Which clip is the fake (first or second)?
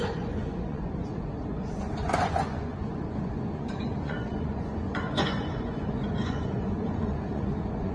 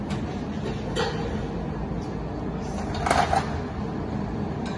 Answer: first